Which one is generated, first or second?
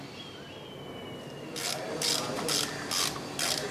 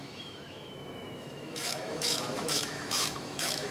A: second